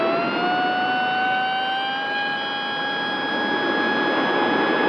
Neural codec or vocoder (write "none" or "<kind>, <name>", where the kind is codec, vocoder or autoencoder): none